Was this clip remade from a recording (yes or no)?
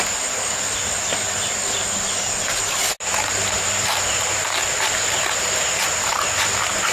no